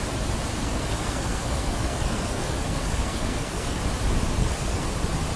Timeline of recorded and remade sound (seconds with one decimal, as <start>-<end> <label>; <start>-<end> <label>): 0.0-0.6 recorded; 0.6-3.8 remade; 3.8-4.4 recorded; 4.4-4.9 remade; 4.9-5.4 recorded